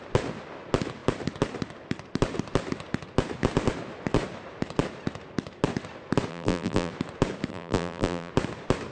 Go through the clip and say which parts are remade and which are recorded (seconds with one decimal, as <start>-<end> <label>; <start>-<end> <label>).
0.0-6.3 recorded; 6.3-6.9 remade; 6.9-7.5 recorded; 7.5-8.3 remade; 8.3-8.9 recorded